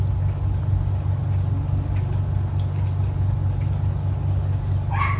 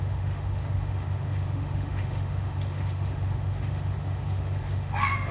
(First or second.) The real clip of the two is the first